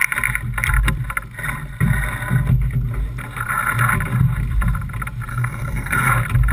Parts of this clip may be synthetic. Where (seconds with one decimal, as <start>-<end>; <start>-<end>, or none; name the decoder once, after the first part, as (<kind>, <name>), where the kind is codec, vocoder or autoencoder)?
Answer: 5.3-6.1 (codec, SNAC)